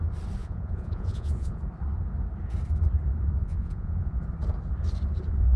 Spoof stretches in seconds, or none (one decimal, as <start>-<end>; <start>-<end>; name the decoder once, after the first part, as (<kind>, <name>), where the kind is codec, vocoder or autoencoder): 0.4-1.6 (vocoder, Vocos); 3.4-4.2